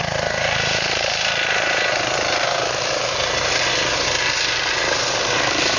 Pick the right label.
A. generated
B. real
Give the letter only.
B